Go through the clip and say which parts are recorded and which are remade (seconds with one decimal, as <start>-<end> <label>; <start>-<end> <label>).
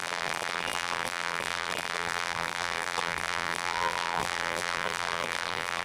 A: 0.0-5.8 remade